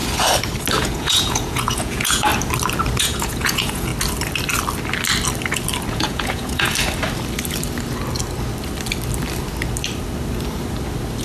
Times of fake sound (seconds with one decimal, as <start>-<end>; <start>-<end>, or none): 0.8-2.3; 3.0-3.9; 5.9-6.7